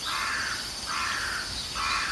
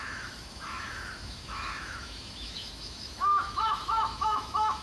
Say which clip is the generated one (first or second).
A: second